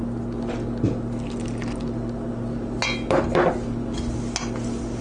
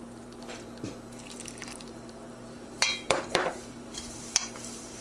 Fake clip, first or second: second